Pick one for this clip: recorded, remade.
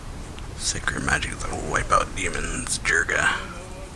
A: remade